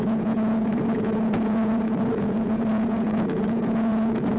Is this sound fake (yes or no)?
yes